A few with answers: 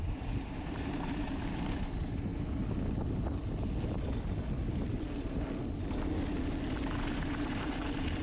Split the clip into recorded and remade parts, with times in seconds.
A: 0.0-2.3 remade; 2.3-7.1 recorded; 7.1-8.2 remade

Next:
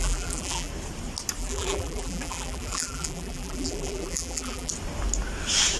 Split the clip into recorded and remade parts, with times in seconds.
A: 0.0-0.7 remade; 0.7-1.4 recorded; 1.4-4.7 remade; 4.7-5.8 recorded

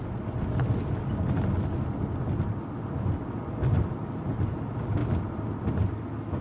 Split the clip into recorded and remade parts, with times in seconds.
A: 0.0-6.4 recorded

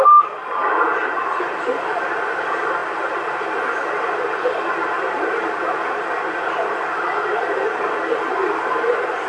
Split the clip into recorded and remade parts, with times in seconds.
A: 0.0-9.3 recorded

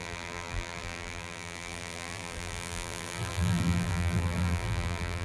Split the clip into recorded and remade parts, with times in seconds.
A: 0.0-5.2 remade

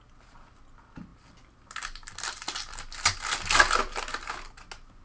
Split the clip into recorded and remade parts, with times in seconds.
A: 0.0-5.0 recorded

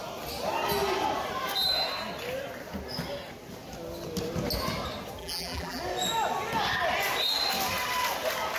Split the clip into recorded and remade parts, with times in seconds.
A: 0.0-5.2 recorded; 5.2-5.8 remade; 5.8-8.6 recorded